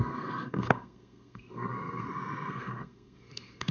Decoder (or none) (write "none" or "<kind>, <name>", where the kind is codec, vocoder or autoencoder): codec, SNAC